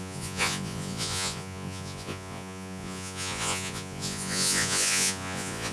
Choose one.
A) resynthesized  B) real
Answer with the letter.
A